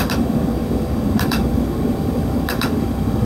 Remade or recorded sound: remade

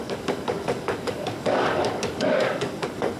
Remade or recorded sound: remade